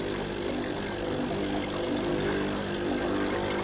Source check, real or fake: real